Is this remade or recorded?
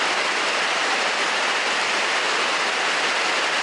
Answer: recorded